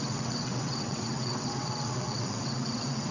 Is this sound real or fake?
fake